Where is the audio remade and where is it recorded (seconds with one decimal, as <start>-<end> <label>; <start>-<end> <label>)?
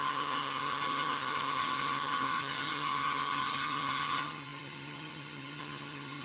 0.0-6.2 remade